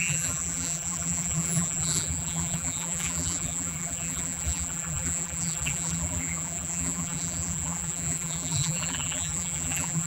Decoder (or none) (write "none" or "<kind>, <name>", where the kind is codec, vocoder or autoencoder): vocoder, BigVGAN v2